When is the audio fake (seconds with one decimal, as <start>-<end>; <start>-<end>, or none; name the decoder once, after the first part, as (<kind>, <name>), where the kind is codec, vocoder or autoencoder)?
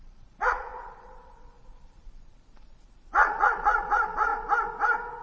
0.0-4.3 (vocoder, Vocos)